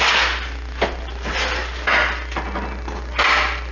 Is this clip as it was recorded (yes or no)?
yes